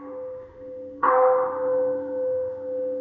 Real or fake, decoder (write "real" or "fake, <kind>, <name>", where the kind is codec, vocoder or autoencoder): fake, autoencoder, DAC-VAE